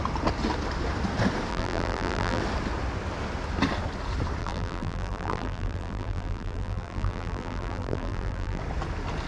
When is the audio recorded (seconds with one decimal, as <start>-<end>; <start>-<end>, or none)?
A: 0.0-1.5; 2.4-4.4; 8.6-9.3